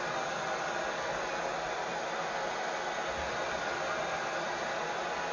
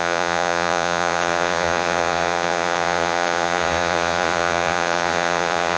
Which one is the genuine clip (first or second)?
first